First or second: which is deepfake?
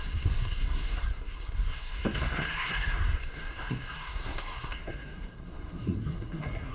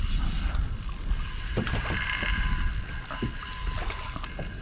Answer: first